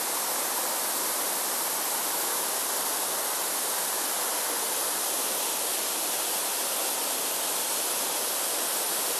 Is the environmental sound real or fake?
real